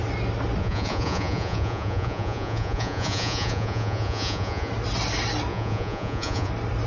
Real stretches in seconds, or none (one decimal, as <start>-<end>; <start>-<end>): 0.0-0.6; 4.7-5.5; 6.5-6.9